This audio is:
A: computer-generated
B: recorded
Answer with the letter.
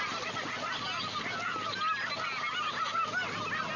B